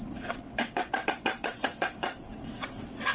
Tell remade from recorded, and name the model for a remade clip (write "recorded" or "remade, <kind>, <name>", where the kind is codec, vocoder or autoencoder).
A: remade, vocoder, WaveNeXt